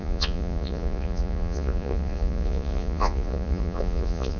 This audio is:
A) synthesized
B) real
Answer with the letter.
A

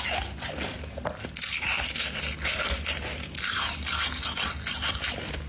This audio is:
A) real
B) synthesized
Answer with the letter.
A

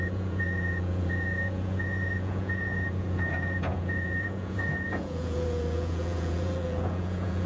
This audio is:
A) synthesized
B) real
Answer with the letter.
A